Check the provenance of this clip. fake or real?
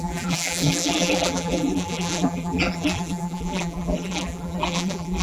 fake